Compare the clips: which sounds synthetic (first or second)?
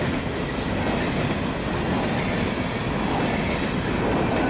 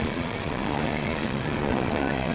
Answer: second